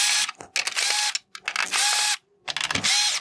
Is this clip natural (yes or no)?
yes